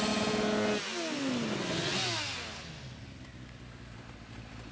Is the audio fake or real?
real